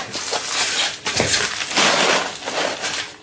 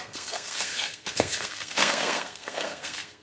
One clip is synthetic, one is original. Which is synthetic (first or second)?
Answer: second